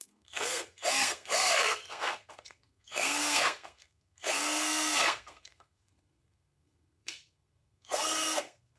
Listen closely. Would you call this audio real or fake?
fake